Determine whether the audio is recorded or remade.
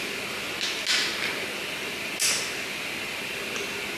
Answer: recorded